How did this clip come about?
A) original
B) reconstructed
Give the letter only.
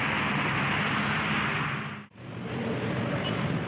A